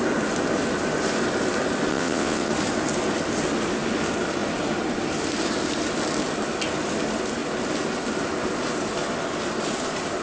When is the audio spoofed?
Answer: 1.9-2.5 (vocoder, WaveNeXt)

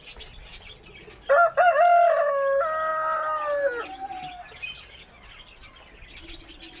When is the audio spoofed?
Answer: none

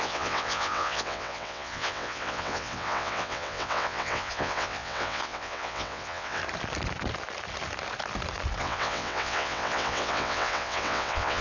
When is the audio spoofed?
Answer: 0.0-6.4 (vocoder, WaveNeXt); 8.6-11.4